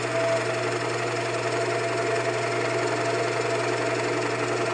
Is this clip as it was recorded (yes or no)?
yes